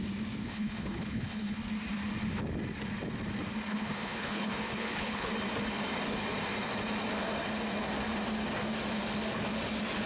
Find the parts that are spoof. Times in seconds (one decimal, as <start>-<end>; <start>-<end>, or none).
0.4-1.6; 3.7-5.3